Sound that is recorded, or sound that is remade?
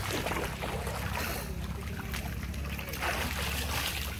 recorded